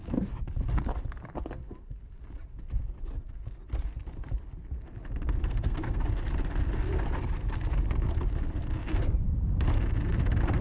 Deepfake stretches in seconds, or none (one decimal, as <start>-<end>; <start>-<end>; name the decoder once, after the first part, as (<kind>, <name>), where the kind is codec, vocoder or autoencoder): 5.4-6.0 (codec, SNAC)